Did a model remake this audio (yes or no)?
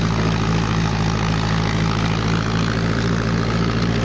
no